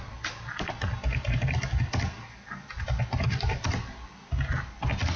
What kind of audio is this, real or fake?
real